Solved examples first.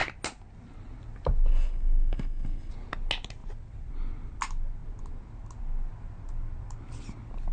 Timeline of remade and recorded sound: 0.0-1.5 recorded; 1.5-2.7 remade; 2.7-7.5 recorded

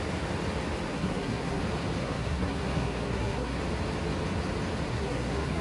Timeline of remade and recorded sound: 0.0-0.9 recorded; 0.9-1.6 remade; 1.6-2.0 recorded; 2.0-3.6 remade; 3.6-4.9 recorded; 4.9-5.6 remade